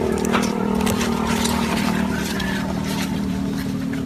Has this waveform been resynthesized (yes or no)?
yes